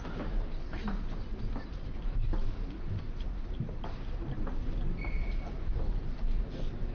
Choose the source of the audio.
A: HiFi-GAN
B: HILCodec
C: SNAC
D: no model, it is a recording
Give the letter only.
D